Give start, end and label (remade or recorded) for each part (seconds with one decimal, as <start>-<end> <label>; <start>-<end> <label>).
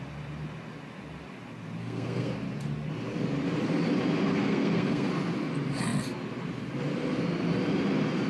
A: 0.0-1.8 recorded; 1.8-2.3 remade; 2.3-4.3 recorded; 4.3-5.1 remade; 5.1-8.3 recorded